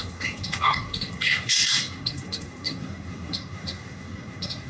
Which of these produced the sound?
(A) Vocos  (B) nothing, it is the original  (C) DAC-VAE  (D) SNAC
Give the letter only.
D